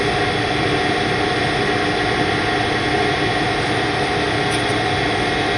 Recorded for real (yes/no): yes